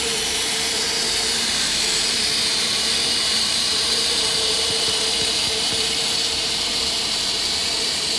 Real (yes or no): no